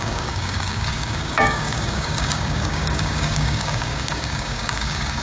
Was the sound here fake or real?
fake